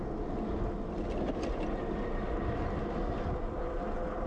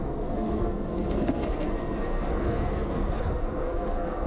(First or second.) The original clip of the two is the first